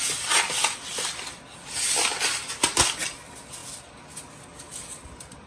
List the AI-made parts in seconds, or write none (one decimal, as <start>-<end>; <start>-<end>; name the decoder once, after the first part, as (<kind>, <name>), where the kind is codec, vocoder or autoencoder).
none